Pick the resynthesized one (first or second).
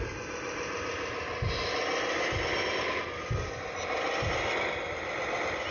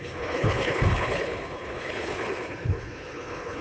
second